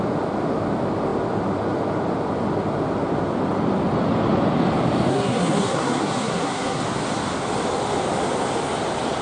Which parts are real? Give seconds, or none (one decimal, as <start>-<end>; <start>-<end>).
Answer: 0.0-5.1; 6.8-9.2